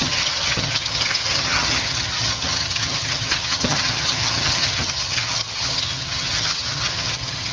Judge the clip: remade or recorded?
remade